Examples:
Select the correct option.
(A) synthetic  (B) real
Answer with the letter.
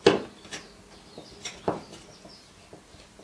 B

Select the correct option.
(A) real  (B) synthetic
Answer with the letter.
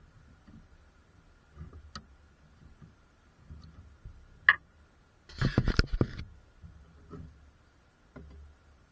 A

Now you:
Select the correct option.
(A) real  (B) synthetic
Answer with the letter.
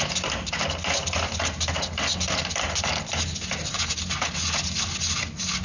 A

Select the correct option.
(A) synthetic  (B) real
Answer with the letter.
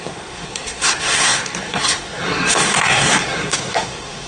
A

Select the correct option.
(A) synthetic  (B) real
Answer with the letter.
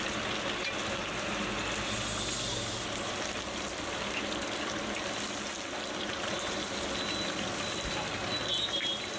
B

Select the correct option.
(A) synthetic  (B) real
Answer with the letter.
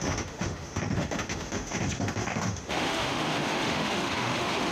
A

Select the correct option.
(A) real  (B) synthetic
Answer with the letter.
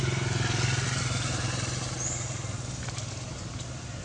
A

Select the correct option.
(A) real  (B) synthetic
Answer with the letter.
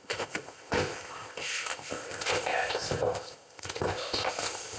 B